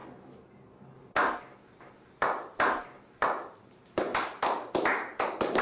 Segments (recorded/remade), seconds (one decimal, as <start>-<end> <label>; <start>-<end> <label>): 0.0-1.6 recorded; 1.6-4.1 remade; 4.1-4.7 recorded; 4.7-5.6 remade